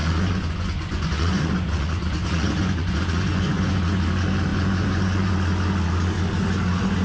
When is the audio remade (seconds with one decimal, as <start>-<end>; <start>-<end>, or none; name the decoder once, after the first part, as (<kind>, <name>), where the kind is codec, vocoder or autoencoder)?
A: 0.0-4.0 (vocoder, Vocos); 4.5-5.3